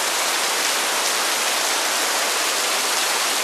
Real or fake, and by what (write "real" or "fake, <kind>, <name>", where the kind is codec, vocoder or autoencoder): fake, vocoder, BigVGAN v2